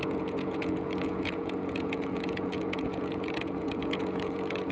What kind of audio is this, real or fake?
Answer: fake